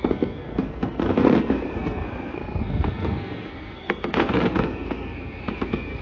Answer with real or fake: fake